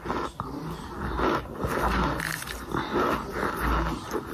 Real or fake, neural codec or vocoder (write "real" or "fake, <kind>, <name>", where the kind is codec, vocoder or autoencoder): real